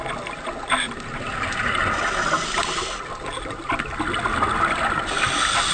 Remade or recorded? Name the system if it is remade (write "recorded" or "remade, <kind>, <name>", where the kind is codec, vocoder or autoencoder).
recorded